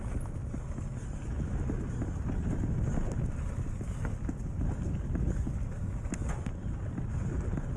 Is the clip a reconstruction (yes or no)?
no